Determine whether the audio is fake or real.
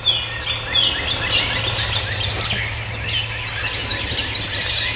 real